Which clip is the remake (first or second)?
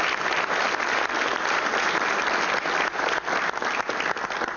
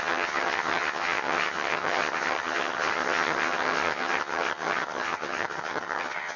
second